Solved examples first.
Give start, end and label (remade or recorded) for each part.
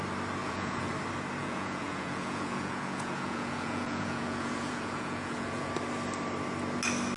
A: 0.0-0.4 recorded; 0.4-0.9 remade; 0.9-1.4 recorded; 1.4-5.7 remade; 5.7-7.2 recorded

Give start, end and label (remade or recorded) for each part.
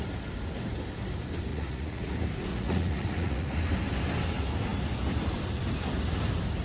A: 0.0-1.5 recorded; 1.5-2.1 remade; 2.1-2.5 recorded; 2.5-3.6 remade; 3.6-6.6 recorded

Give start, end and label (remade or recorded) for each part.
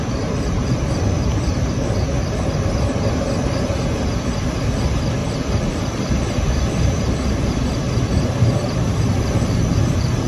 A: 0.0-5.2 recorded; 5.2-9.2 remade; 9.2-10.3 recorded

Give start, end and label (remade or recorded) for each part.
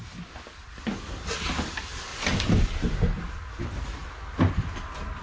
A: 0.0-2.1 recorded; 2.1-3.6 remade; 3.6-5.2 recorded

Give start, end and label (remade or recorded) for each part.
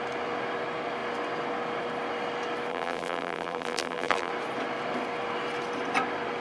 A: 0.0-2.7 recorded; 2.7-4.3 remade; 4.3-6.4 recorded